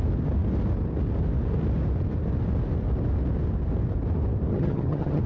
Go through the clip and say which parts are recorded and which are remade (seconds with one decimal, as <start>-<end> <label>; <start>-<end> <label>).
0.0-4.5 recorded; 4.5-5.3 remade